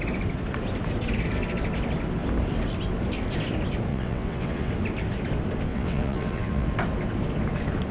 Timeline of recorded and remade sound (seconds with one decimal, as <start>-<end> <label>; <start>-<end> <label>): 0.0-3.9 recorded; 3.9-4.7 remade; 4.7-5.7 recorded; 5.7-6.7 remade; 6.7-7.9 recorded